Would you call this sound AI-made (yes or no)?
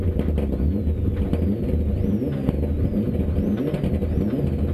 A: no